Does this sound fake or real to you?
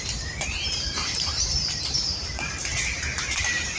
fake